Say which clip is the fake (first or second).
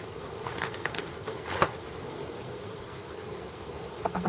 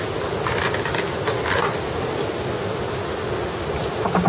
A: first